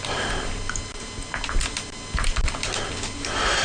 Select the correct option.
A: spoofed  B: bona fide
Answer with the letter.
B